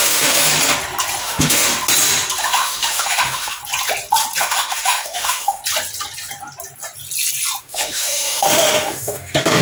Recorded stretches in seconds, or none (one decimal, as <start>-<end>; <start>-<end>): 0.4-1.2; 1.7-2.4; 3.6-4.4; 5.6-7.6